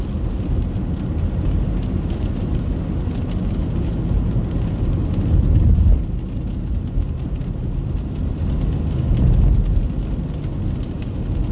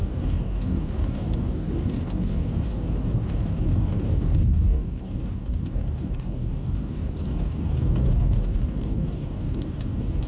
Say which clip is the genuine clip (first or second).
first